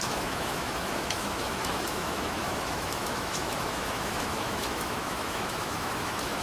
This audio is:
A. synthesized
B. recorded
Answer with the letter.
A